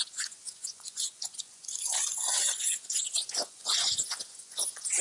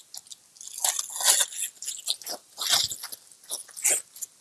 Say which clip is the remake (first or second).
first